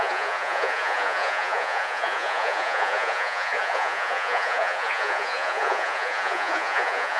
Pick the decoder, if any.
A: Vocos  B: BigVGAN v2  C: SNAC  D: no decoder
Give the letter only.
A